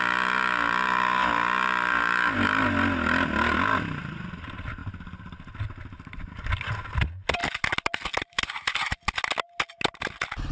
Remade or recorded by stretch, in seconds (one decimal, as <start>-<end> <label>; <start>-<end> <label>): 0.0-10.5 recorded